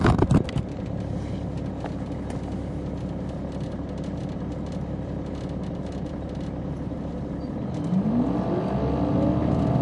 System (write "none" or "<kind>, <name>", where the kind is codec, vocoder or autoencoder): none